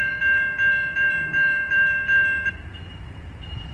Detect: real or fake fake